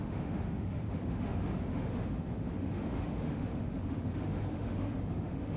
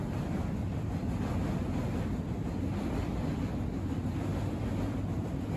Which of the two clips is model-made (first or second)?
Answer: first